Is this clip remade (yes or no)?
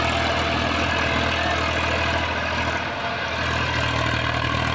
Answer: no